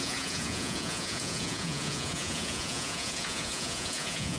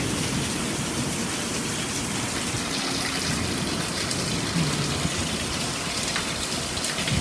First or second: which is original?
second